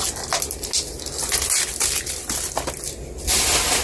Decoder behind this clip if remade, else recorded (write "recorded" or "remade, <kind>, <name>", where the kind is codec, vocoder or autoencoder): recorded